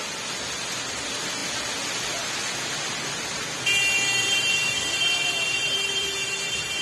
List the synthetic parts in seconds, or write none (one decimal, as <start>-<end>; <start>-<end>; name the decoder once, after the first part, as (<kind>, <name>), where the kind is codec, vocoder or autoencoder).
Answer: 5.6-6.8 (vocoder, BigVGAN v2)